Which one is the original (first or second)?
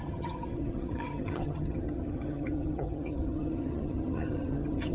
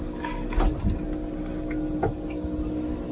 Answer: second